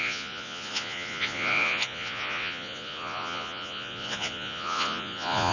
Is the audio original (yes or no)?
no